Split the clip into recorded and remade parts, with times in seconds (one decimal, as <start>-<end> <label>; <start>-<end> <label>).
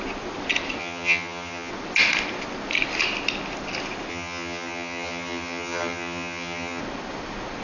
0.0-0.8 recorded; 0.8-1.7 remade; 1.7-4.1 recorded; 4.1-6.8 remade; 6.8-7.6 recorded